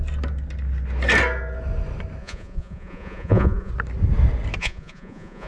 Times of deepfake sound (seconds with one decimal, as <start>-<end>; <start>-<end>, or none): 2.2-3.7; 4.6-5.5